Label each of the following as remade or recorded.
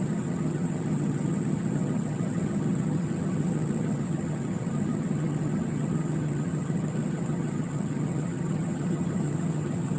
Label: remade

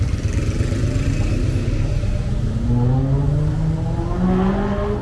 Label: recorded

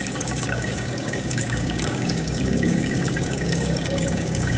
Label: remade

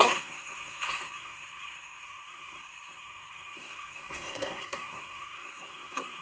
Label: remade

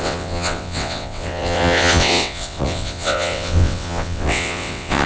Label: remade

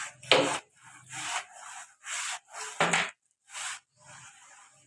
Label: recorded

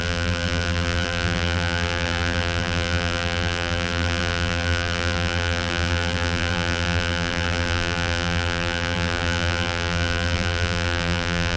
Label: remade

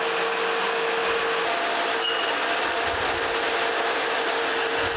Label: recorded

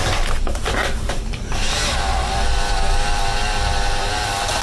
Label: remade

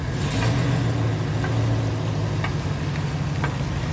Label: recorded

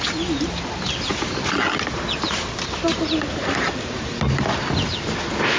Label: recorded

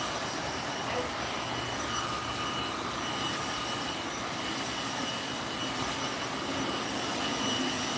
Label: recorded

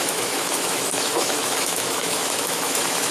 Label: remade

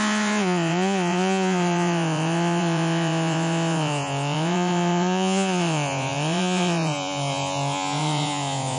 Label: remade